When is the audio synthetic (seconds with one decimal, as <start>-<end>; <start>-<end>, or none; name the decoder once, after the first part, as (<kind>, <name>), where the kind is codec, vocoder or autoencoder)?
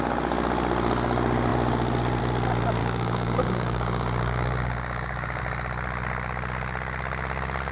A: 2.8-5.4 (codec, DAC)